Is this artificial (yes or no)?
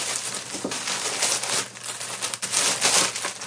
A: no